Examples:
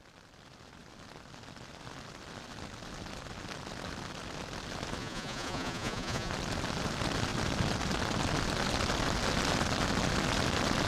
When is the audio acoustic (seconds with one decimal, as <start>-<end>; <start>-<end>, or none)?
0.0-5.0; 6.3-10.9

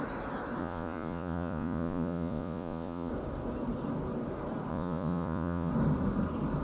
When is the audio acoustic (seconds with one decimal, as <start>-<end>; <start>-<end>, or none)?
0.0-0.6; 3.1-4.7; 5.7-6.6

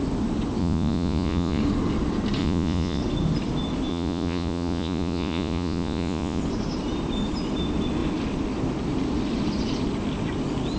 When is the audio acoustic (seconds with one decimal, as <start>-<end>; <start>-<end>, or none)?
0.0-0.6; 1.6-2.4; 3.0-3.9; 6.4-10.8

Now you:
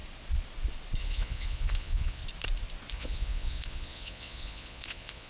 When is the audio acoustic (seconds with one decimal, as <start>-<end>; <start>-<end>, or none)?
0.0-1.0; 2.2-2.9

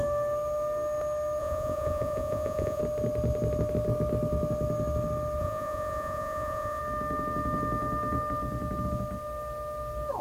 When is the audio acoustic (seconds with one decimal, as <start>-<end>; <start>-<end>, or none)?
0.0-1.4; 2.8-5.4; 6.8-10.2

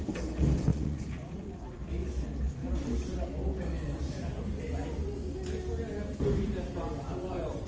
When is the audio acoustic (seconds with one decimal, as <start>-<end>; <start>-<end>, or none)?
0.0-0.7; 1.8-7.7